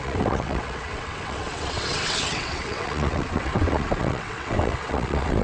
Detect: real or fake fake